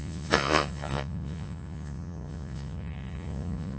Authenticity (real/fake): fake